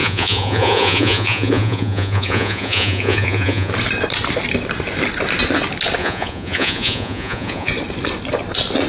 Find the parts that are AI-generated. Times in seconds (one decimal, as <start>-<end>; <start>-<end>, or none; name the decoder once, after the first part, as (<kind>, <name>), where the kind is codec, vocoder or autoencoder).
0.0-3.7 (vocoder, Vocos); 6.0-7.7